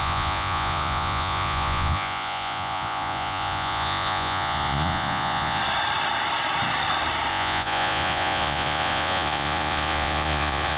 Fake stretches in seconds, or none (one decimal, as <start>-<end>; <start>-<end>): 0.0-5.6; 7.3-10.8